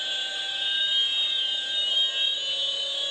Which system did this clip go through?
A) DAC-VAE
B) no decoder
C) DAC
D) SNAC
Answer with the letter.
B